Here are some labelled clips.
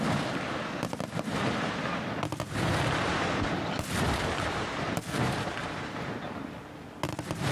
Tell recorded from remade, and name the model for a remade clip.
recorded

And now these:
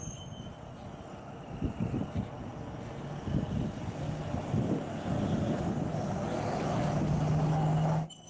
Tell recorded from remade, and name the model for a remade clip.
recorded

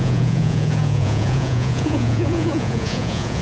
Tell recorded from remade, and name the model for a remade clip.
remade, vocoder, Vocos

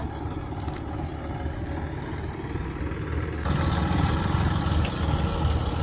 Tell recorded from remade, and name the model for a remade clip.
recorded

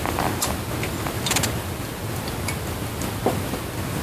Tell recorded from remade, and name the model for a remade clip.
recorded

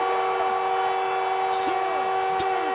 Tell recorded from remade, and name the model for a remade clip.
recorded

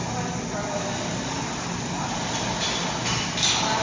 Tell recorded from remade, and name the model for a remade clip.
recorded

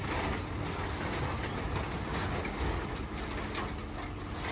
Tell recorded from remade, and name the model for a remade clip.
recorded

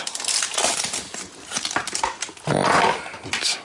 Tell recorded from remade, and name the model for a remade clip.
recorded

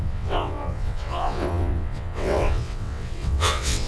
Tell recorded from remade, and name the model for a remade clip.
remade, vocoder, WaveNeXt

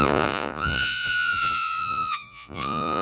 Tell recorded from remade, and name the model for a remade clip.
remade, vocoder, Vocos